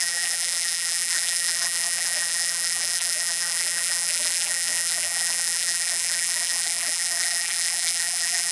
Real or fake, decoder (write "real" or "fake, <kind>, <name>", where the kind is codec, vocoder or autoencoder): fake, vocoder, BigVGAN v2